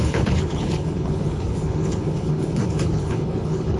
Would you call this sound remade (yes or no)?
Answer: yes